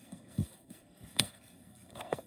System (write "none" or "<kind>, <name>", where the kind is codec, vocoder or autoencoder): codec, SNAC